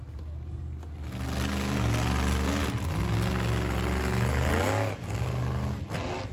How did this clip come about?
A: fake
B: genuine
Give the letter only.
B